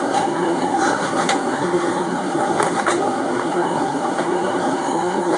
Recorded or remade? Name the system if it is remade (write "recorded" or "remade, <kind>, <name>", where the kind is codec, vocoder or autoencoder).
remade, codec, SNAC